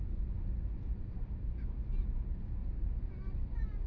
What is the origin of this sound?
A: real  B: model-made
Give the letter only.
A